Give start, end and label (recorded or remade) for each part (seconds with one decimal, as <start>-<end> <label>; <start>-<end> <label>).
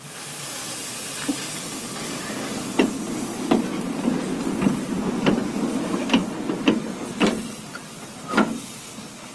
0.0-9.3 recorded